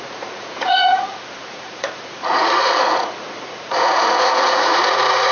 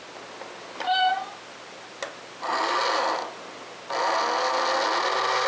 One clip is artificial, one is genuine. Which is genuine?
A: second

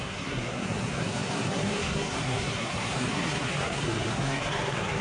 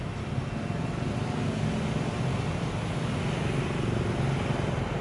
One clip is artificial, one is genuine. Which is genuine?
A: second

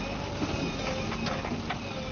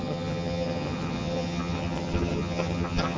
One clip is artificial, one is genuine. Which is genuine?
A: first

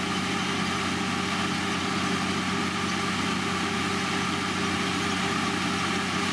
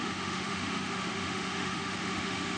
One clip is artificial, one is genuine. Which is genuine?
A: first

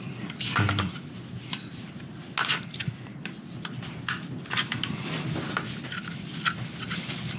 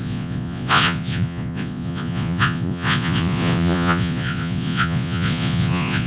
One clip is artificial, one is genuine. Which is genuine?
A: first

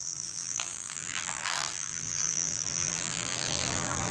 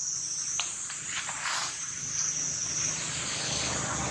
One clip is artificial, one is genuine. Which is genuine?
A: second